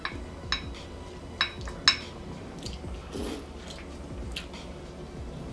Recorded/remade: recorded